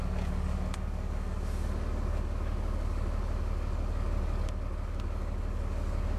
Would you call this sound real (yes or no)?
no